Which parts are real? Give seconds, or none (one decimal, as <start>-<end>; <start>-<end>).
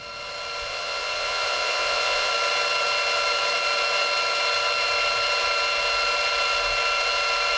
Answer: 0.0-0.7; 2.3-7.6